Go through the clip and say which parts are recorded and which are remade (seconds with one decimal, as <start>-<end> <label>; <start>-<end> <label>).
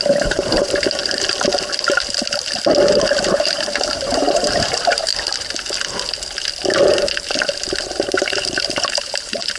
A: 0.0-1.0 remade; 1.0-3.3 recorded; 3.3-5.1 remade; 5.1-7.8 recorded; 7.8-9.6 remade